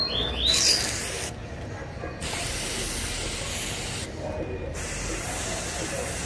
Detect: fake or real real